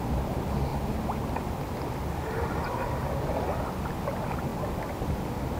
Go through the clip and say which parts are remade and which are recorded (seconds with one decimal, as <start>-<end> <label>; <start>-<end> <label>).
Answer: 0.0-5.6 recorded